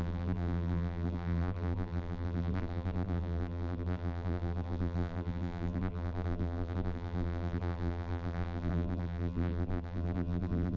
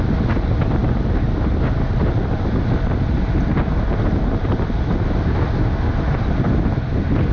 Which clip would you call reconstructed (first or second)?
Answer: first